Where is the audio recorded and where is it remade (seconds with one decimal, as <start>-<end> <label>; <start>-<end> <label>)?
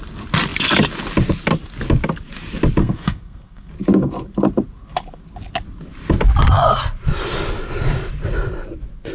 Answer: 0.0-2.8 recorded; 2.8-3.7 remade; 3.7-9.1 recorded